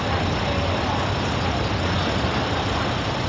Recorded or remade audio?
recorded